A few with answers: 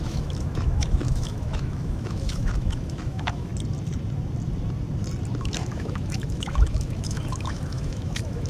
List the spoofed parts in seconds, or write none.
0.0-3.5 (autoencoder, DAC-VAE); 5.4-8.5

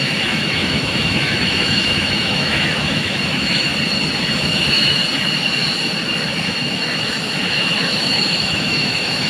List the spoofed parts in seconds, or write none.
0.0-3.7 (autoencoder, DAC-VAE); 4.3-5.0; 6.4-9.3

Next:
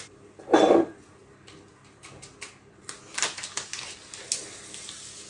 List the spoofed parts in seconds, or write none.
none